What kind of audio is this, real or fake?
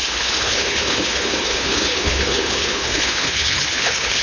fake